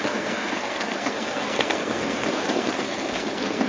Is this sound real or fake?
fake